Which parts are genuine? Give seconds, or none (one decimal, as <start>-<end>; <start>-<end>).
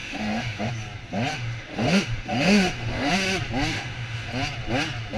0.7-1.3; 3.1-3.7; 4.3-5.2